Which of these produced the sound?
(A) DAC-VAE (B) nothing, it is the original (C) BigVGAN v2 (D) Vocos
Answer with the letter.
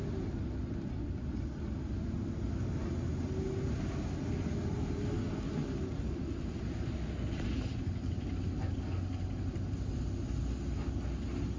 B